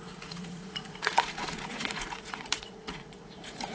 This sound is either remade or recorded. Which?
remade